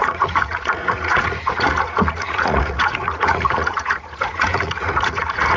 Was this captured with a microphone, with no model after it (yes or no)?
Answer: no